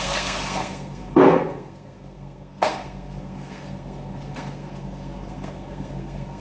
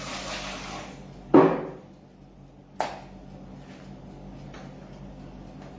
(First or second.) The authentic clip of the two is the second